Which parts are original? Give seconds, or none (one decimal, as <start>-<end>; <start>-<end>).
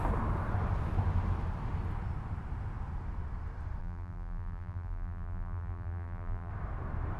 0.0-3.8; 6.5-7.2